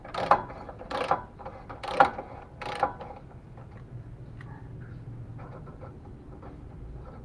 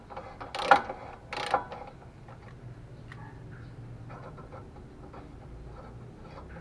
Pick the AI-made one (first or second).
first